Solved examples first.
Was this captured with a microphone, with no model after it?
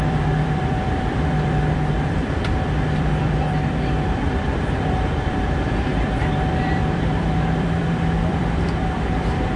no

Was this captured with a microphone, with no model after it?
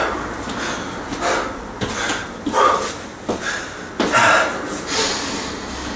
yes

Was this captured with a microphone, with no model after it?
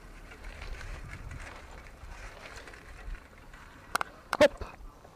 no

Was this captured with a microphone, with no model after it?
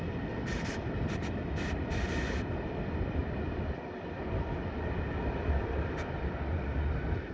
no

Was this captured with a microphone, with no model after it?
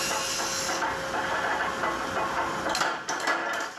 yes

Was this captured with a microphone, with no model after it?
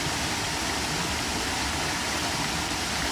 yes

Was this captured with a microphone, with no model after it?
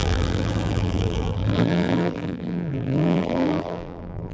no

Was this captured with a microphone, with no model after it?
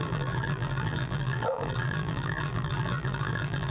no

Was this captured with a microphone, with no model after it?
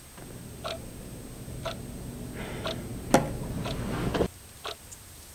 yes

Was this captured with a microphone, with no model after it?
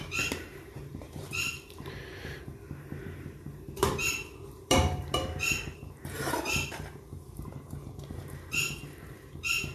no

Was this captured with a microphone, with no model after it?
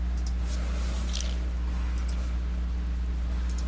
yes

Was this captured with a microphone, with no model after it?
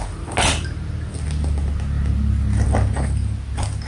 yes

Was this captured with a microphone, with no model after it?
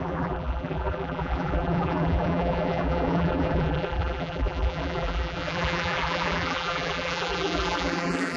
no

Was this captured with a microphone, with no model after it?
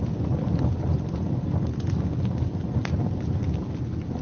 yes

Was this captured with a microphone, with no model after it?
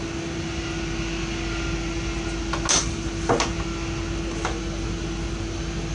yes